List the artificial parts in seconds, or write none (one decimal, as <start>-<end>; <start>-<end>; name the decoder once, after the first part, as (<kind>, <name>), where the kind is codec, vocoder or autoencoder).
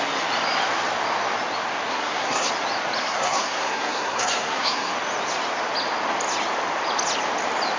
1.9-2.5 (codec, SNAC); 3.0-4.9